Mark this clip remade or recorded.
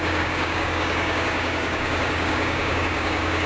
remade